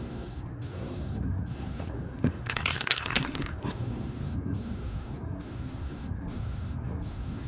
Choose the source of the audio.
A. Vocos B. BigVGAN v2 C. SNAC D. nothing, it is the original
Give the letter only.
C